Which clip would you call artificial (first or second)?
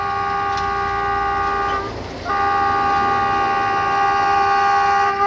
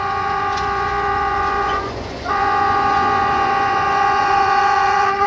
second